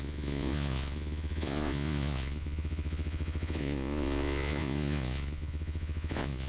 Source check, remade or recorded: remade